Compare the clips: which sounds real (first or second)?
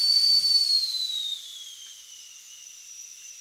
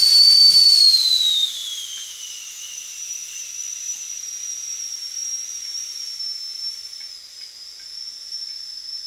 second